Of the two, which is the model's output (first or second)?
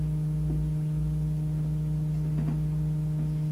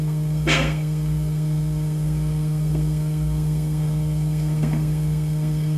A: second